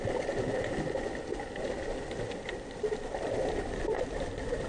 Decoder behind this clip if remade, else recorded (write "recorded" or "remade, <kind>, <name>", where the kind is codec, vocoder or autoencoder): recorded